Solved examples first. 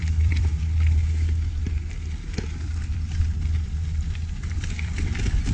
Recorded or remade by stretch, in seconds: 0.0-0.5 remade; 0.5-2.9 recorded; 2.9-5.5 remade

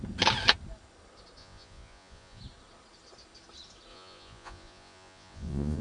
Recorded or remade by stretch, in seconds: 0.0-1.4 recorded; 1.4-2.4 remade; 2.4-3.9 recorded; 3.9-5.8 remade

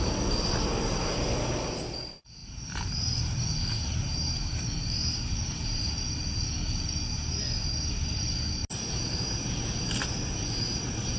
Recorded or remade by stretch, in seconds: 0.0-2.4 recorded; 2.4-5.8 remade; 5.8-8.6 recorded; 8.6-11.2 remade

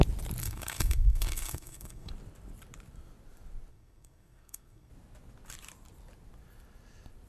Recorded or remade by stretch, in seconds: 0.0-0.4 recorded; 0.4-2.1 remade; 2.1-3.7 recorded; 3.7-4.9 remade; 4.9-7.3 recorded